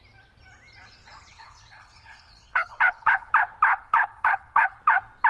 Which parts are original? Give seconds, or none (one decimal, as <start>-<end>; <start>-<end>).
0.0-1.3; 3.3-3.7; 4.8-5.3